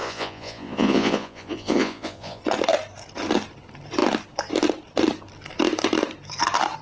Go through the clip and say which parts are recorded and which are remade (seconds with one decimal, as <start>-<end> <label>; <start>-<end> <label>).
0.0-2.4 remade; 2.4-6.8 recorded